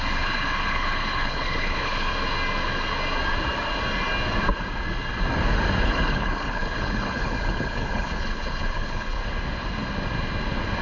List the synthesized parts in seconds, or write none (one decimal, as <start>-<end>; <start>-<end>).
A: 0.0-2.1; 5.8-9.2